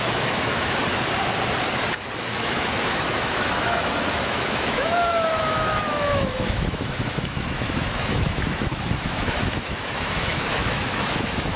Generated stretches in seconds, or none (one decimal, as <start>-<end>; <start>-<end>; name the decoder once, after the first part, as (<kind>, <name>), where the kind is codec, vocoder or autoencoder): 0.0-0.8 (autoencoder, DAC-VAE); 2.2-11.6